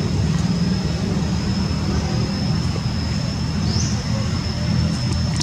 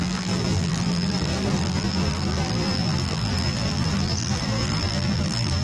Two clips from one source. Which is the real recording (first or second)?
first